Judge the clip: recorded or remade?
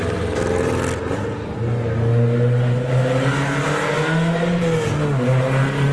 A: recorded